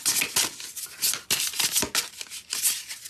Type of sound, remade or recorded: recorded